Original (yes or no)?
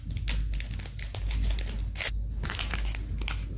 yes